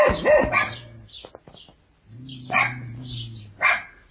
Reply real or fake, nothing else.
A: real